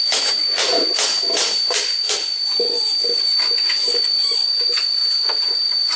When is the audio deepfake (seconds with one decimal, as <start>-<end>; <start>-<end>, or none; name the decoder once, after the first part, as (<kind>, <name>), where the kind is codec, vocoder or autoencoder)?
4.4-6.0 (vocoder, BigVGAN v2)